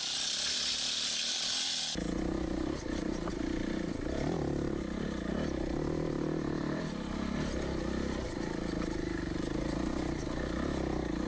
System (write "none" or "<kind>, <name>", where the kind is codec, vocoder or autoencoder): none